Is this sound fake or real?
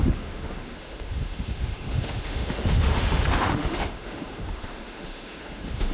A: fake